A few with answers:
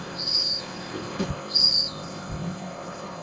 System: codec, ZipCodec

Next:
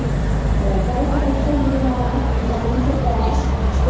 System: vocoder, BigVGAN v2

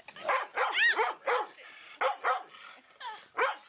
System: none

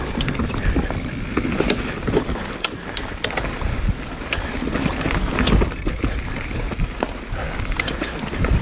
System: none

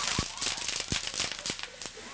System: none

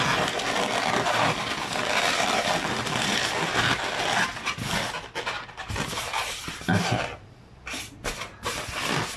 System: vocoder, BigVGAN v2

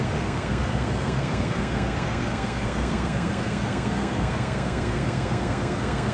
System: codec, SNAC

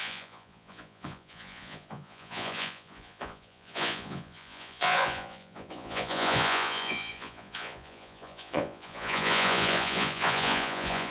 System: vocoder, Vocos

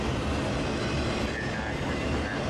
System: none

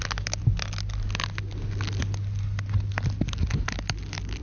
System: none